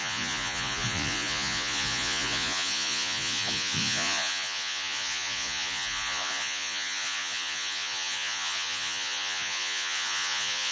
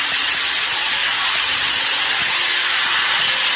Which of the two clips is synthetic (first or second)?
first